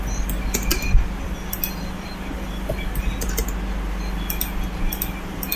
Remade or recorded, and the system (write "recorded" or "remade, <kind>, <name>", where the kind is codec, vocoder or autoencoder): recorded